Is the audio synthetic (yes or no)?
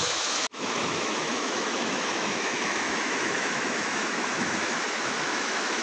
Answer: yes